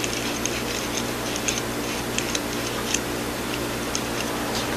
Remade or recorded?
recorded